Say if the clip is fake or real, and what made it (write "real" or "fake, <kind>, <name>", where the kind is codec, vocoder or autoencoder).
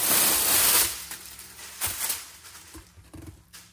fake, vocoder, BigVGAN v2